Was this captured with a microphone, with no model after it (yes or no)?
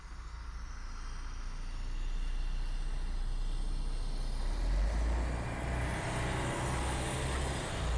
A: yes